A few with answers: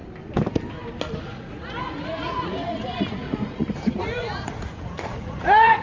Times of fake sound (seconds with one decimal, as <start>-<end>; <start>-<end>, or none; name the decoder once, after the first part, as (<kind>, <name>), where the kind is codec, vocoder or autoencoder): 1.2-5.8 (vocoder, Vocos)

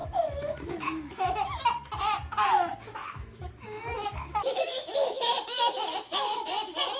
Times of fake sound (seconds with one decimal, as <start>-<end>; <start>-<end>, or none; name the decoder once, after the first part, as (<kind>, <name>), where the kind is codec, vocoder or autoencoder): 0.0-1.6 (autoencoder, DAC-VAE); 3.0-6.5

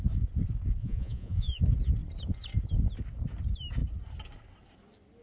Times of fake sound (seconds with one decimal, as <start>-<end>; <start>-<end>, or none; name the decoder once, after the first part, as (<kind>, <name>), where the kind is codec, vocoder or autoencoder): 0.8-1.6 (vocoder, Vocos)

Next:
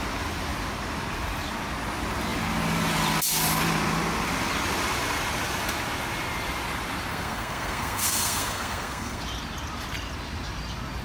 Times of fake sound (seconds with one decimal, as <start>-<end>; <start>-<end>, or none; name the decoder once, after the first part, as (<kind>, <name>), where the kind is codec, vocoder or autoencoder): 7.1-9.2 (codec, SNAC)

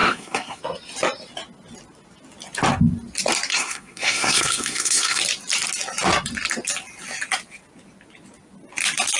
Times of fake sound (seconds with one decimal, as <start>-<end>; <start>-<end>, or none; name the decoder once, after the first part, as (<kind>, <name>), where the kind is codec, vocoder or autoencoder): 0.0-0.6 (codec, SNAC); 3.5-5.2

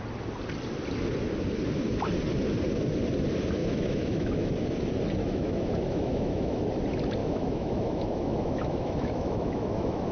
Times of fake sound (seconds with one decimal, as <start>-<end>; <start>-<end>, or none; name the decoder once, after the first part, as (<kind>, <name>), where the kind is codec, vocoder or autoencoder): 3.6-4.5 (autoencoder, DAC-VAE); 5.2-6.6; 7.2-10.1

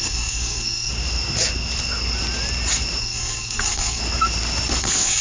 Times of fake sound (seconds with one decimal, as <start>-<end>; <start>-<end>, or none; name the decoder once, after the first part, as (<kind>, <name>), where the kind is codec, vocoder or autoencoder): 0.0-0.9 (codec, SNAC); 3.0-4.0; 4.8-5.2